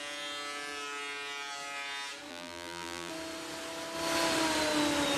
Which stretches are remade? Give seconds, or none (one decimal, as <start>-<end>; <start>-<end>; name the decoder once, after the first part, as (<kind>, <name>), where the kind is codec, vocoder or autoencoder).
2.3-3.1 (vocoder, BigVGAN v2)

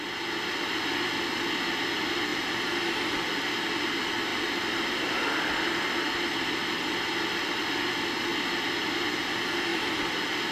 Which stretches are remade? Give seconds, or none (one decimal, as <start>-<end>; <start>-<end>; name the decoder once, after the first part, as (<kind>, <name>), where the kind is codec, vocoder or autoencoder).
4.3-7.6 (vocoder, BigVGAN v2); 8.3-9.0; 9.7-10.5